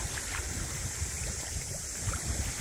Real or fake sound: fake